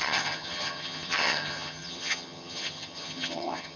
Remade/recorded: remade